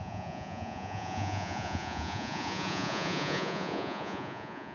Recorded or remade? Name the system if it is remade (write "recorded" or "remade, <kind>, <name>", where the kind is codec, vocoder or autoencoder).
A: remade, vocoder, Vocos